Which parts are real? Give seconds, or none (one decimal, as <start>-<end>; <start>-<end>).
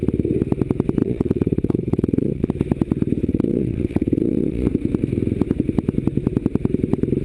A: 0.0-1.0; 2.5-3.2; 4.7-7.2